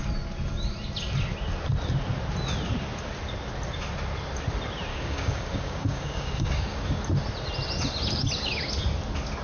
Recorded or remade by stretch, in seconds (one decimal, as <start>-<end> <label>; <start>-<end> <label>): 0.0-4.9 recorded; 4.9-7.0 remade; 7.0-9.4 recorded